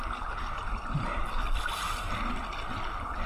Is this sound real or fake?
real